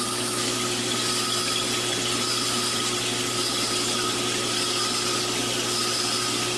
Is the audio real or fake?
real